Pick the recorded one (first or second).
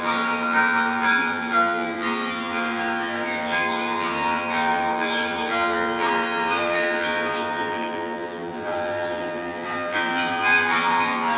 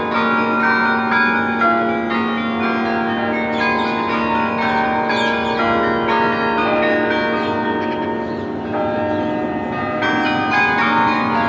second